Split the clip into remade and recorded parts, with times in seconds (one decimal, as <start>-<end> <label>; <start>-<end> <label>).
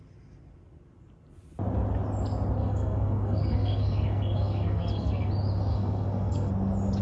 0.0-2.6 recorded; 2.6-5.3 remade; 5.3-5.7 recorded; 5.7-6.5 remade; 6.5-7.0 recorded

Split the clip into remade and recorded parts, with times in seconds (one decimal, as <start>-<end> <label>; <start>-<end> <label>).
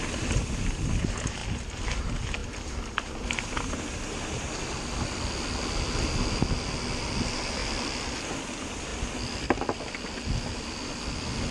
0.0-11.5 recorded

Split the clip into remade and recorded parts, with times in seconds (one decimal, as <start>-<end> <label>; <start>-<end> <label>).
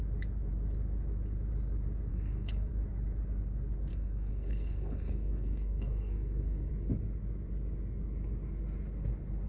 0.0-2.1 recorded; 2.1-2.7 remade; 2.7-3.9 recorded; 3.9-6.7 remade; 6.7-9.5 recorded